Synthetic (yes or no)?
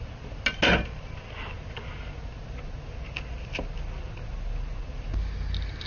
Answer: no